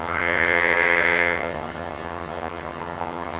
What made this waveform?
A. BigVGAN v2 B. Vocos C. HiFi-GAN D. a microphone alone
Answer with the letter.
C